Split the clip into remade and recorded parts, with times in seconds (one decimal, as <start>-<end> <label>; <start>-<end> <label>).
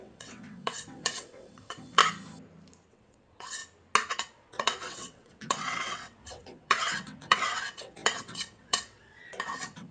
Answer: 0.0-2.0 remade; 2.0-2.9 recorded; 2.9-3.6 remade; 3.6-4.1 recorded; 4.1-9.9 remade